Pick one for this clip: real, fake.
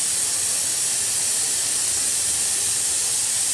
real